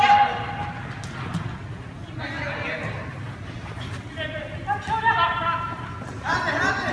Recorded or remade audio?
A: recorded